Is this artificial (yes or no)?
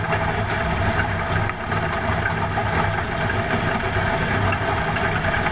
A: no